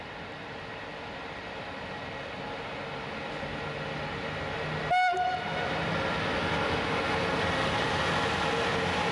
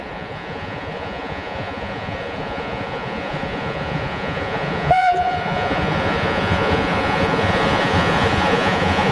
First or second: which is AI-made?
second